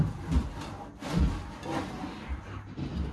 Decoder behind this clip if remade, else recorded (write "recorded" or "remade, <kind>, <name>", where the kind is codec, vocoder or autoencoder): recorded